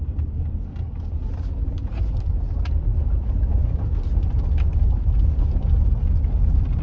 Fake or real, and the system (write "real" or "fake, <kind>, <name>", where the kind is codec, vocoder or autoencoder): real